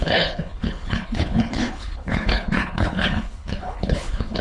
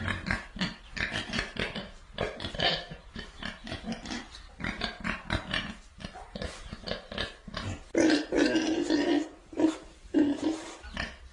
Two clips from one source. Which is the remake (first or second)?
first